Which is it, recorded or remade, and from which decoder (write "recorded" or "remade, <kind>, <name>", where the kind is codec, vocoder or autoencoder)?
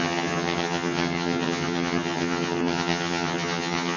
remade, vocoder, HiFi-GAN